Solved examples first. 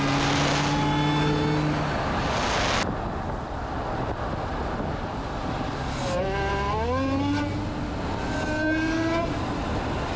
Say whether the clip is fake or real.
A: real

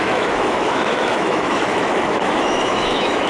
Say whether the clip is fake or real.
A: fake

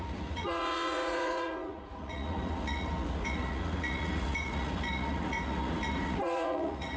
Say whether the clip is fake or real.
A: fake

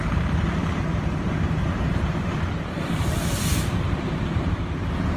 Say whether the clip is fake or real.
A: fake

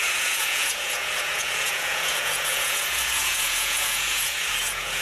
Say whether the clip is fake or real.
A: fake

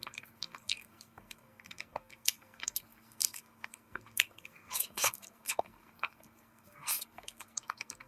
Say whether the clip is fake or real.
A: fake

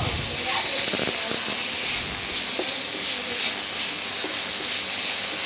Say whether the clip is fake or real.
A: real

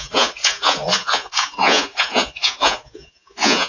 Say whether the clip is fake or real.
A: fake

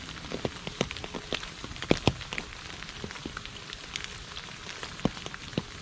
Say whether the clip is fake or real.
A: real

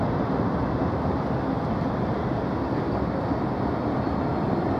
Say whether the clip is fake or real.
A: real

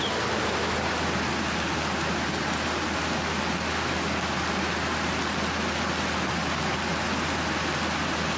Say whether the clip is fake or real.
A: real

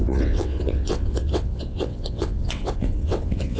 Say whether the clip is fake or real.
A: fake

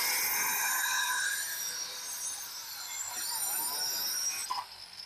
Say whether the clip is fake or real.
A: real